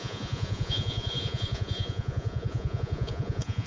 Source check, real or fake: fake